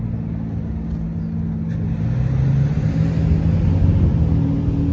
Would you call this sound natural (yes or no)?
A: yes